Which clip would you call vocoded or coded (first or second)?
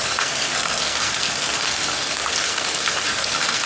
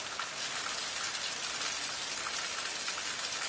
first